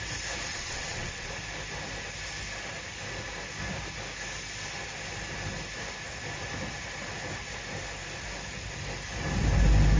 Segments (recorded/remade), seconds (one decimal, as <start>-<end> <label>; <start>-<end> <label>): 0.0-0.5 recorded; 0.5-1.3 remade; 1.3-10.0 recorded